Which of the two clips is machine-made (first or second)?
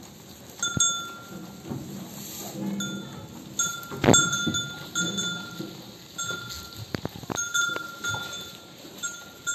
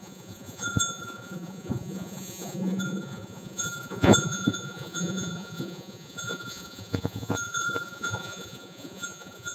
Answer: second